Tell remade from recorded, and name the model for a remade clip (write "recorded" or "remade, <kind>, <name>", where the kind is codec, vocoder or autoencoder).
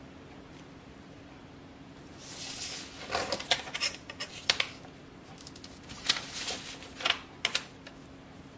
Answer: recorded